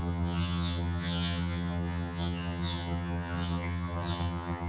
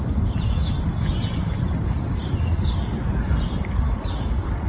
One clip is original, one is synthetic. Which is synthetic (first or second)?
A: first